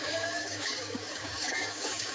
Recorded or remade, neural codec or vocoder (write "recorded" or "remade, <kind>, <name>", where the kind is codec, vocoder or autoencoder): remade, codec, DAC